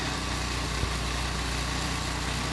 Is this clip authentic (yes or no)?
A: yes